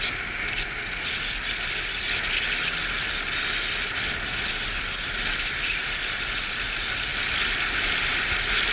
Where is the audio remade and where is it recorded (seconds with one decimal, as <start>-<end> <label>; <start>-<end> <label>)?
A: 0.0-8.7 recorded

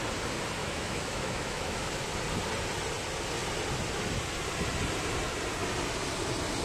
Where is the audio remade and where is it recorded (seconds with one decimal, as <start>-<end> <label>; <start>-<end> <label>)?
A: 0.0-0.6 recorded; 0.6-1.9 remade; 1.9-6.6 recorded

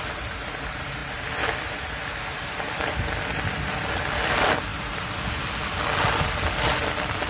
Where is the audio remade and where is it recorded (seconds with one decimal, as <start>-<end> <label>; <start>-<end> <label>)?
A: 0.0-7.3 recorded

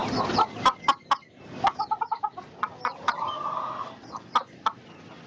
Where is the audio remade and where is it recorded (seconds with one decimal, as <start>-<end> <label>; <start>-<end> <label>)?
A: 0.0-5.3 recorded

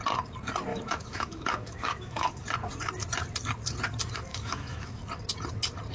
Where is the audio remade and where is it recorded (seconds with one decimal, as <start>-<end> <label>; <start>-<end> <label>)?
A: 0.0-0.7 recorded; 0.7-2.4 remade; 2.4-4.3 recorded; 4.3-5.0 remade; 5.0-5.9 recorded

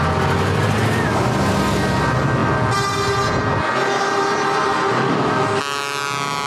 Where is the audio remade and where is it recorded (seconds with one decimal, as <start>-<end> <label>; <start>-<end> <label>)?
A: 0.0-6.5 recorded

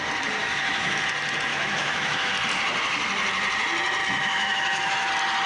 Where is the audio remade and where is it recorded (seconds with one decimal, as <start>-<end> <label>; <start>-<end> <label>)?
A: 0.0-0.4 recorded; 0.4-1.0 remade; 1.0-1.5 recorded; 1.5-2.3 remade; 2.3-4.0 recorded; 4.0-5.1 remade; 5.1-5.5 recorded